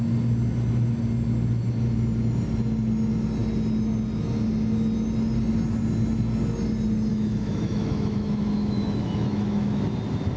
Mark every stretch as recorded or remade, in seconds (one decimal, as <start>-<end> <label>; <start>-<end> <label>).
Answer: 0.0-7.1 recorded; 7.1-9.8 remade; 9.8-10.4 recorded